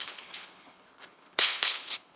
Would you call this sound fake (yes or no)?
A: yes